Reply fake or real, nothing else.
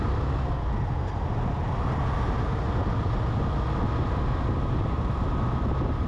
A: real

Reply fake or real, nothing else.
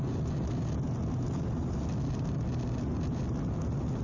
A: real